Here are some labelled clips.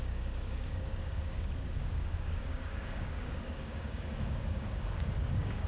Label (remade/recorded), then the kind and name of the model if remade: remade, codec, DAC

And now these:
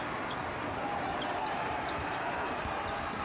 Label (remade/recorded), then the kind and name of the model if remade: recorded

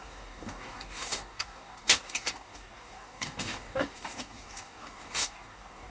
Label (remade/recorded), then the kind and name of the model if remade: remade, codec, DAC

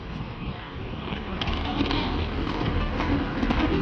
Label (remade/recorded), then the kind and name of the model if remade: remade, codec, DAC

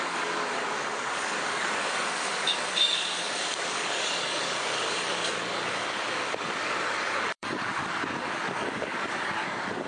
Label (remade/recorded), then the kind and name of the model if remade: remade, codec, DAC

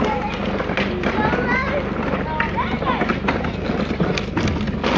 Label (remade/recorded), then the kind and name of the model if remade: recorded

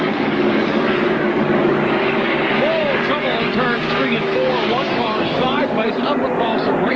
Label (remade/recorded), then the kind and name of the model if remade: remade, codec, DAC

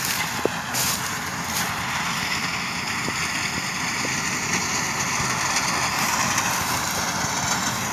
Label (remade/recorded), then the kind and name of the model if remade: recorded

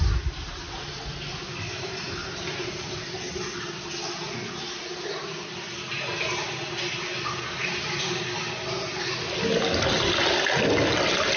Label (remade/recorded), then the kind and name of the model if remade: recorded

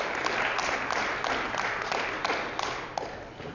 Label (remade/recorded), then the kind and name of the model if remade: recorded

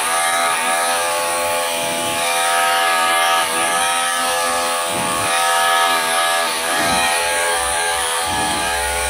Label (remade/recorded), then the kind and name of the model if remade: remade, codec, DAC